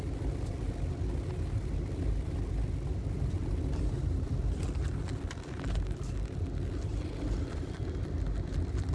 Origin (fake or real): real